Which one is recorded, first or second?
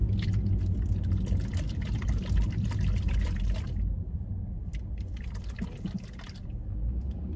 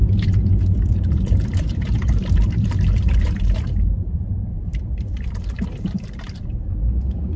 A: first